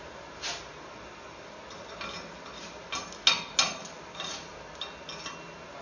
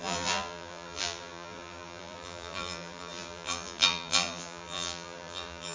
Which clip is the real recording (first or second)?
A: first